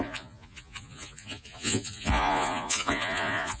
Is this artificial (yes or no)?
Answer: yes